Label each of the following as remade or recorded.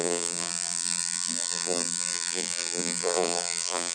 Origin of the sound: remade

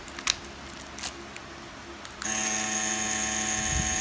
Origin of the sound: recorded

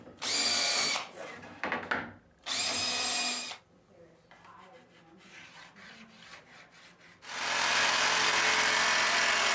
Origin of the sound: recorded